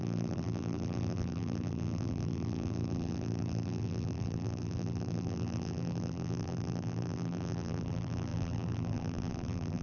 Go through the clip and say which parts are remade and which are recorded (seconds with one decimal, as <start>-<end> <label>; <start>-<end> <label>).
0.0-9.8 remade